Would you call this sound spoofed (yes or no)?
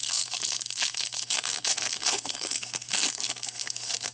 yes